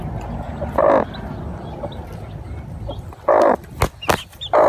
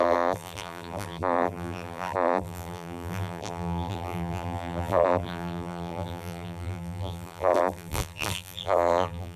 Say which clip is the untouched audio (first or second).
first